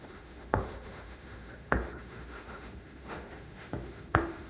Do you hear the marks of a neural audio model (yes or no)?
yes